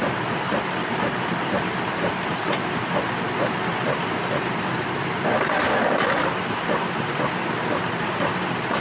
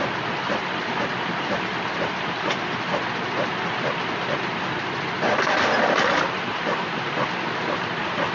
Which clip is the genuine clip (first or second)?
first